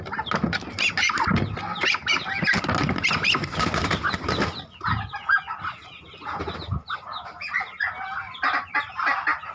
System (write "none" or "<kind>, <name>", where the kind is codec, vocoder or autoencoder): none